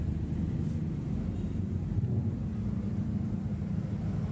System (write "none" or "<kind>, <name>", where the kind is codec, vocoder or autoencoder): none